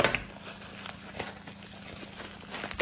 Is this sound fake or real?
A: real